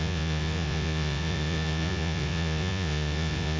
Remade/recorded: remade